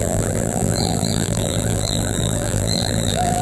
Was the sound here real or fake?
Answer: fake